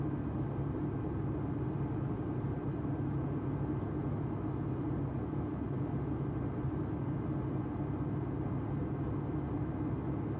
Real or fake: real